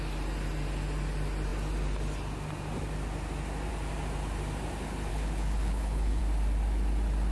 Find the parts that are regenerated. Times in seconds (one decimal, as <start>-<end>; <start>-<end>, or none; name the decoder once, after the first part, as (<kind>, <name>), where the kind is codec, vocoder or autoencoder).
5.1-6.2 (codec, HILCodec)